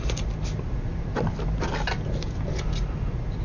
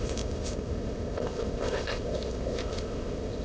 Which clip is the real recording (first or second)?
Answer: first